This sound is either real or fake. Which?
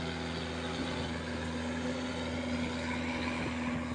real